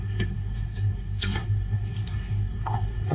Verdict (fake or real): fake